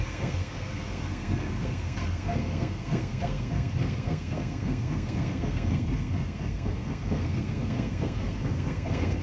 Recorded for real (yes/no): no